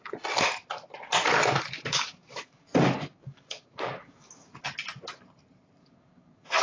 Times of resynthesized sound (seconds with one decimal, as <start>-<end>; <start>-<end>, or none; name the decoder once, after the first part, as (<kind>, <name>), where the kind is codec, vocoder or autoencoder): 2.2-4.5 (codec, DAC); 5.8-6.6